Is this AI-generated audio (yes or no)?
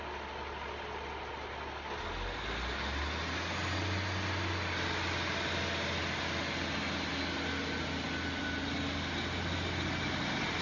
no